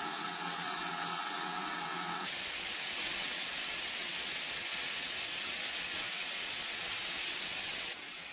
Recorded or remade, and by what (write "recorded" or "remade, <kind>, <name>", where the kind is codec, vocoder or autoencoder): remade, vocoder, WaveNeXt